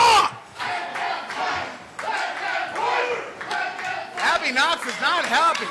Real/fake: real